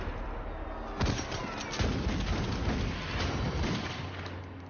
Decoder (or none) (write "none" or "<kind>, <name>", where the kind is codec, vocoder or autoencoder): none